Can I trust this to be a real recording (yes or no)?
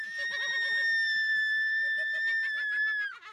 yes